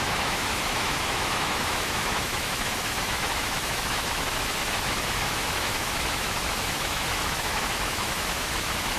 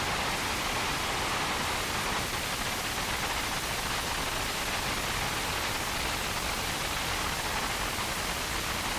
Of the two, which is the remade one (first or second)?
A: first